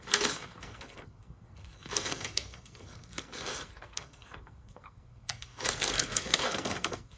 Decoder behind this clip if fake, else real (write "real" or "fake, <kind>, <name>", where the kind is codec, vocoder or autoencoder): fake, codec, SNAC